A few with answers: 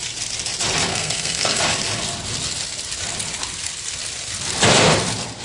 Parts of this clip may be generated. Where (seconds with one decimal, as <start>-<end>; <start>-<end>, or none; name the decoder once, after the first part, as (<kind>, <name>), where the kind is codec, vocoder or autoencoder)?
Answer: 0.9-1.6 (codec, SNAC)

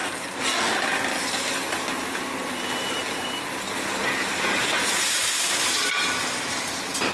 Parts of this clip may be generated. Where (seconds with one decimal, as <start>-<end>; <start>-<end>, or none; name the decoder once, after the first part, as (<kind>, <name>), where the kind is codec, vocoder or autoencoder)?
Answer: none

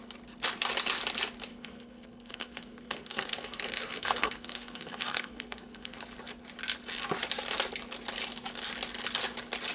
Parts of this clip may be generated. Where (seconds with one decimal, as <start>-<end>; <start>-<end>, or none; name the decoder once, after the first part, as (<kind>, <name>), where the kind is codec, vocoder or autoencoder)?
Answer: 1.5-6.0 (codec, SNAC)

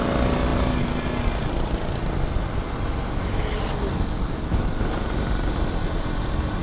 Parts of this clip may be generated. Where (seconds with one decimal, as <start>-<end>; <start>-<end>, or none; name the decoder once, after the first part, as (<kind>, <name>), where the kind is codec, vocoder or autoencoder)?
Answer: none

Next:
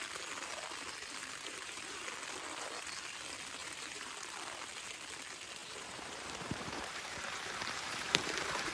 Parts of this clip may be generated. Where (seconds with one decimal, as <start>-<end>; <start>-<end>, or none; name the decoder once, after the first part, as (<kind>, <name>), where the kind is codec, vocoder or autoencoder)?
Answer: 1.2-2.0 (vocoder, BigVGAN v2); 3.6-4.1; 5.6-8.7

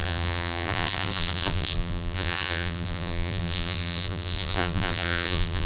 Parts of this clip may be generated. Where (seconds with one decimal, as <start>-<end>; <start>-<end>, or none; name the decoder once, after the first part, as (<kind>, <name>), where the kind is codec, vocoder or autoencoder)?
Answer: 0.0-5.7 (vocoder, BigVGAN v2)

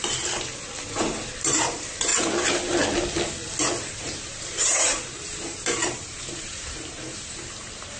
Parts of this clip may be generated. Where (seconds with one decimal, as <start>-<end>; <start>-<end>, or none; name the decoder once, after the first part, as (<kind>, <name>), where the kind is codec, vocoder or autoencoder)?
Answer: 0.0-2.1 (vocoder, BigVGAN v2); 3.9-8.0